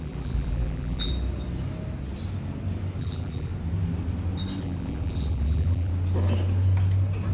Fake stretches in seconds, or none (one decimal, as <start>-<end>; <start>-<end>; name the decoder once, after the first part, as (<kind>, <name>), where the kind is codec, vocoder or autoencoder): 0.0-1.1 (vocoder, BigVGAN v2); 3.0-3.5; 4.6-5.9